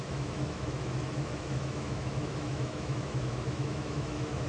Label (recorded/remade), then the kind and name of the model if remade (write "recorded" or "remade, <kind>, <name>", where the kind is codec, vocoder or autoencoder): remade, autoencoder, DAC-VAE